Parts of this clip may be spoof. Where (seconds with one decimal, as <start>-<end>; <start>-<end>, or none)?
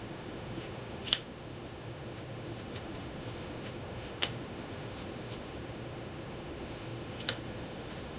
0.0-8.2